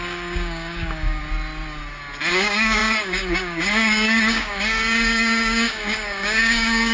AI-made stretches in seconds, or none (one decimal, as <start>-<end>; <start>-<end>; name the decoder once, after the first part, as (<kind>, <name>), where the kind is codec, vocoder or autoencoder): 0.0-1.2 (codec, DAC); 2.3-6.9